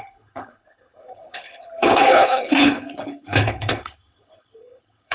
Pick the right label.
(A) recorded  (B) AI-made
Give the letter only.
B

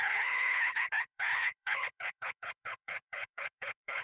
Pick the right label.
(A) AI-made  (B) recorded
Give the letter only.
A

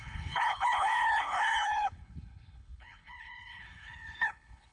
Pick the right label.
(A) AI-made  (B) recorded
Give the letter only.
A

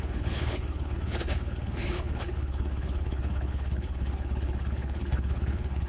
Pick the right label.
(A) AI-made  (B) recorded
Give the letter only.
A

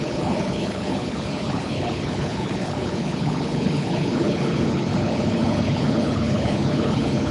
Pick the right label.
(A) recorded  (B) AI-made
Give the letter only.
B